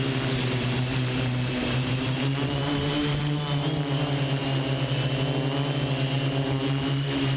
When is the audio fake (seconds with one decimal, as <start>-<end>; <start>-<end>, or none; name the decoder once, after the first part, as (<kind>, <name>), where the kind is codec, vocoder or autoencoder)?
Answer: 0.0-4.4 (vocoder, BigVGAN v2); 6.2-7.4

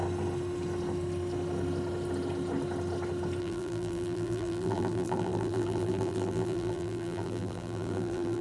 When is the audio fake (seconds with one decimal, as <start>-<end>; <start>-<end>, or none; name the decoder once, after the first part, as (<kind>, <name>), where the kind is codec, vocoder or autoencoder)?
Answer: 3.4-8.4 (vocoder, BigVGAN v2)